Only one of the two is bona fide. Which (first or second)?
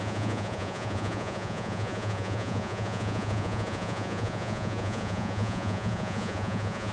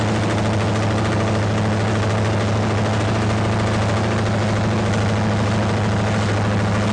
second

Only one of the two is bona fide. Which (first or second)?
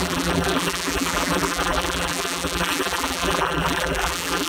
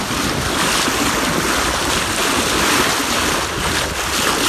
second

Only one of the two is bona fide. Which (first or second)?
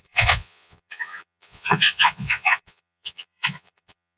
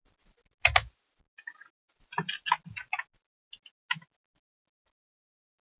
second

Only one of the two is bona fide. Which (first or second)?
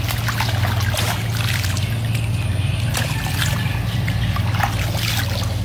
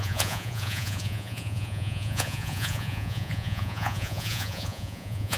first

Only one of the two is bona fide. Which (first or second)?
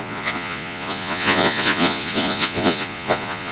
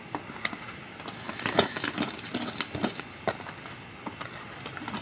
second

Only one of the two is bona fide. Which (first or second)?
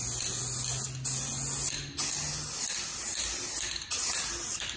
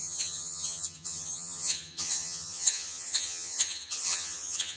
first